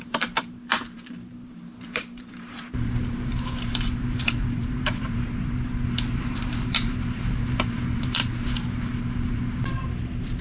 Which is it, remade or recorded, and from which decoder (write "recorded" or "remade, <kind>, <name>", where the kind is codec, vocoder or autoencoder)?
remade, vocoder, BigVGAN v2